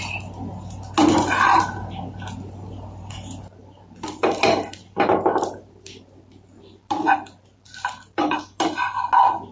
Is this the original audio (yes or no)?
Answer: yes